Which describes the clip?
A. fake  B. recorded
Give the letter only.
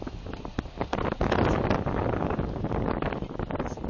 B